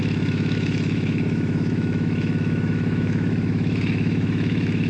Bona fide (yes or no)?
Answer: no